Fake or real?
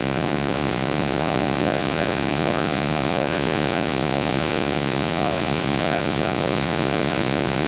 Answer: fake